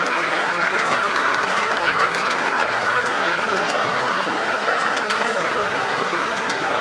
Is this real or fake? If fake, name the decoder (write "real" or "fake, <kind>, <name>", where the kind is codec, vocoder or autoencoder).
fake, codec, SNAC